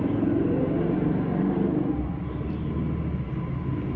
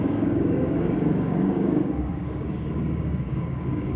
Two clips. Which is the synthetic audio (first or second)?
second